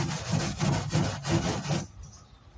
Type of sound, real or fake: real